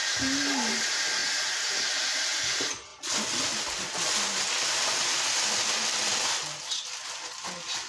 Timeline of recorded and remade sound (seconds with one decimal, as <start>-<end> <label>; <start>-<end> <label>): 0.0-7.9 recorded